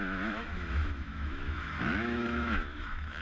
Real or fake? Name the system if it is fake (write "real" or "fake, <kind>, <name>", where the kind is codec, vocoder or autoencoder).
fake, autoencoder, DAC-VAE